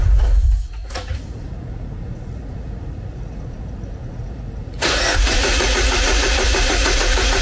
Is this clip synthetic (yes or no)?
yes